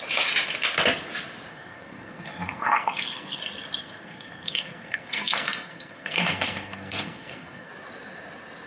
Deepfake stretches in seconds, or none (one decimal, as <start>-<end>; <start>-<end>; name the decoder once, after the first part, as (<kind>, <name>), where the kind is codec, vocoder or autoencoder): 1.5-3.4 (codec, SNAC); 3.8-7.7